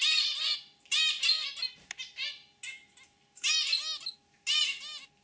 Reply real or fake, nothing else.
real